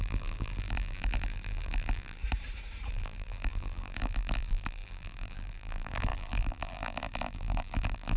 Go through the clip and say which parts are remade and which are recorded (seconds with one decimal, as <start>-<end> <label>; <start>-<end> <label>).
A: 0.0-2.2 remade; 2.2-2.9 recorded; 2.9-8.2 remade

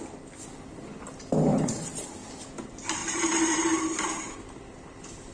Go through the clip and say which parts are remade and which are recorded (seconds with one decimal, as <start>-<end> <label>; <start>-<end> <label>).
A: 0.0-1.5 recorded; 1.5-2.3 remade; 2.3-3.0 recorded; 3.0-4.3 remade; 4.3-5.3 recorded

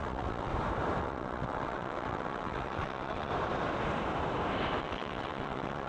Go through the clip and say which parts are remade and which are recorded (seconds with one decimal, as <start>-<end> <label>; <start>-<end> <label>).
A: 0.0-0.5 remade; 0.5-1.0 recorded; 1.0-3.3 remade; 3.3-4.8 recorded; 4.8-5.9 remade

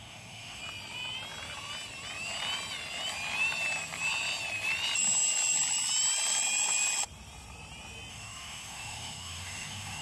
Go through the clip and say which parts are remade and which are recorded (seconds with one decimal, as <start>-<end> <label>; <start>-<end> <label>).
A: 0.0-0.6 remade; 0.6-8.1 recorded; 8.1-10.0 remade